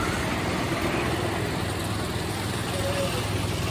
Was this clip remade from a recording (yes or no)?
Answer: no